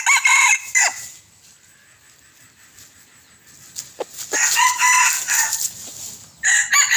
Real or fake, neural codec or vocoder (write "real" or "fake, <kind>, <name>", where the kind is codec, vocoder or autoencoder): real